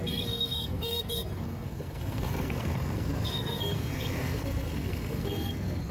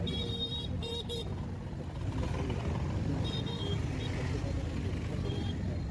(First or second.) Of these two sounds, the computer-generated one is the first